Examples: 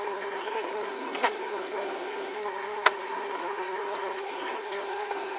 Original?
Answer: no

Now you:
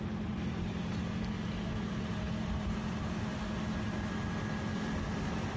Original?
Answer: yes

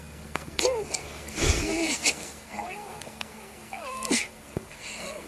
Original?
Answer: no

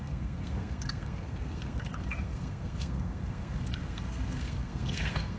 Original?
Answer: no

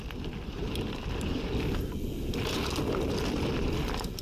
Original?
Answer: yes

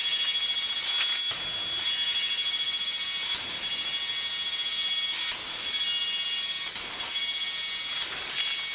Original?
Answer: yes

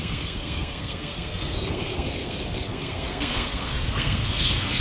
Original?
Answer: no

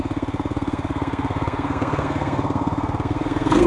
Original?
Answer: no